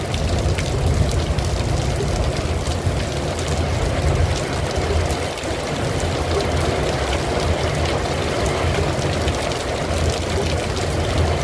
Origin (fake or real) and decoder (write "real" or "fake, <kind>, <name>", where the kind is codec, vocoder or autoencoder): real